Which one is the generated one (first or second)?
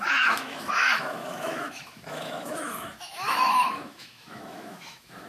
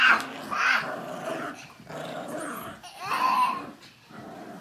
first